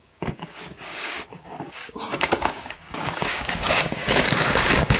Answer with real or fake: fake